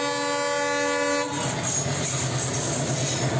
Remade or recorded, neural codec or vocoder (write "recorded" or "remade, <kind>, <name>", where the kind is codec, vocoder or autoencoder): recorded